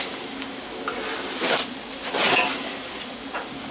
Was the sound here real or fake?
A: real